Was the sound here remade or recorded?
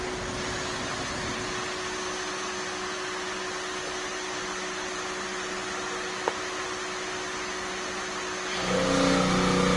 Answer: recorded